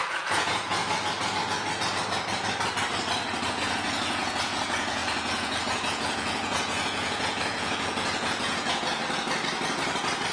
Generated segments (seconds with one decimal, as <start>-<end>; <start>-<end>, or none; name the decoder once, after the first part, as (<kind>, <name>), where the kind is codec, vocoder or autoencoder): 0.0-0.8 (vocoder, Vocos); 3.5-9.0